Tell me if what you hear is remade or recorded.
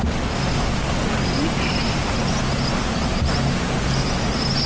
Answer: recorded